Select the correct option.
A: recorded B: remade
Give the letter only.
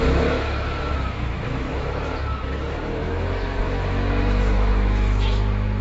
B